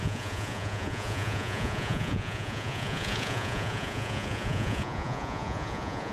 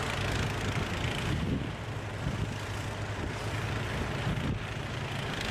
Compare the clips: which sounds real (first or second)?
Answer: second